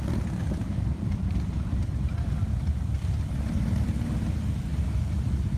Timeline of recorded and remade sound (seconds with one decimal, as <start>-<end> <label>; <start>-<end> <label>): 0.0-0.4 recorded; 0.4-1.8 remade; 1.8-5.6 recorded